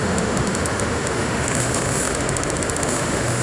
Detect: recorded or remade remade